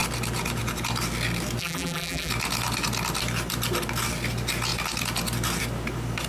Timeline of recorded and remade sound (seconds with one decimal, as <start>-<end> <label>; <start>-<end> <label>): 0.0-1.6 recorded; 1.6-2.3 remade; 2.3-6.3 recorded